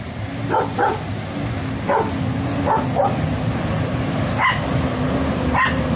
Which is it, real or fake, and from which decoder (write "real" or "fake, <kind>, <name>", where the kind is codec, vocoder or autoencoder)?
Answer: real